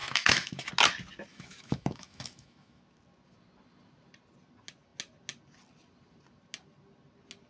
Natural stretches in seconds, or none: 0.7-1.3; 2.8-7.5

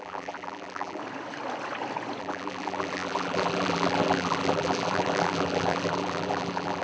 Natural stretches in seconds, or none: 1.0-2.2

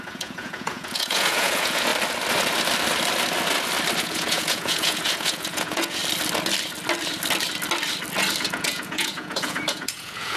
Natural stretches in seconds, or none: 1.9-4.0; 6.0-8.4

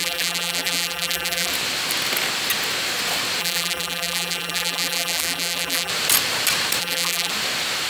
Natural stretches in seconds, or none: 1.5-3.4; 5.9-6.8; 7.3-7.9

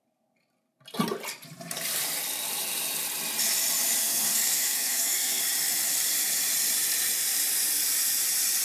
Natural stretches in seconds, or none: 0.0-4.0; 5.4-8.6

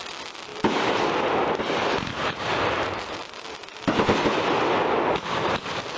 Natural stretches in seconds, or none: 0.0-6.0

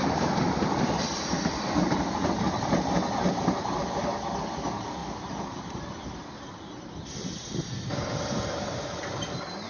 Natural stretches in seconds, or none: 0.0-9.7

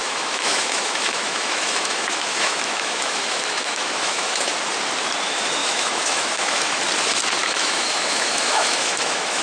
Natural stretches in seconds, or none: 4.5-5.6; 6.8-7.4